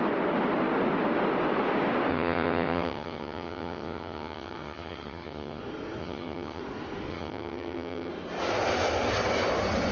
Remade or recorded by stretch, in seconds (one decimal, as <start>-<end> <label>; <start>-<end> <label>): 0.0-2.1 recorded; 2.1-5.6 remade; 5.6-6.0 recorded; 6.0-6.6 remade; 6.6-7.1 recorded; 7.1-8.1 remade; 8.1-9.9 recorded

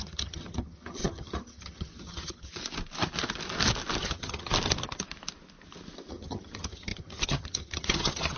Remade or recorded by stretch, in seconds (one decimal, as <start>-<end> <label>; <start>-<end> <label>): 0.0-2.5 remade; 2.5-4.0 recorded; 4.0-4.5 remade; 4.5-6.1 recorded; 6.1-8.4 remade

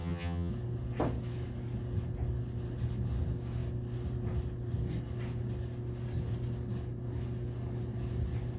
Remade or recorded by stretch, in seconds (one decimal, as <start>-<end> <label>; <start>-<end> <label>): 0.0-0.5 remade; 0.5-8.6 recorded

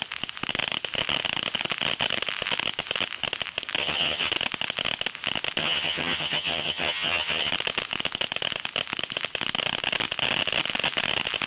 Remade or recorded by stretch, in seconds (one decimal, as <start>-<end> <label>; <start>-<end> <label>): 0.0-3.8 recorded; 3.8-4.3 remade; 4.3-5.6 recorded; 5.6-7.5 remade; 7.5-11.5 recorded